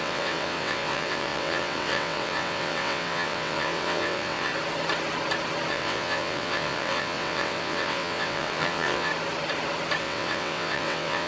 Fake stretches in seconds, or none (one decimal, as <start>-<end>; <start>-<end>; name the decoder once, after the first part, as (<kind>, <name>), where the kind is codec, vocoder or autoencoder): 0.0-4.5 (vocoder, WaveNeXt); 5.7-9.1; 10.0-11.3